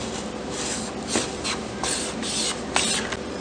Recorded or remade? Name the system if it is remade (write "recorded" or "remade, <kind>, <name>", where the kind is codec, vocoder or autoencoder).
recorded